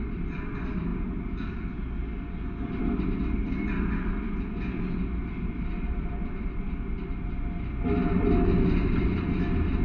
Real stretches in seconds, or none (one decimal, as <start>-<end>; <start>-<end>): 0.0-9.8